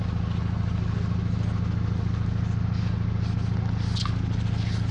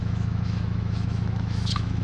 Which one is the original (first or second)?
first